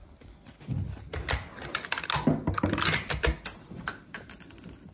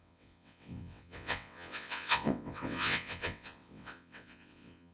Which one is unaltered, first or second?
first